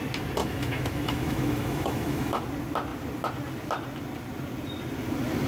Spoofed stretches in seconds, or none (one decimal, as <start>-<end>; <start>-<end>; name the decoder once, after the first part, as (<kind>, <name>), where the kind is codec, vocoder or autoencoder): 0.4-2.4 (autoencoder, DAC-VAE)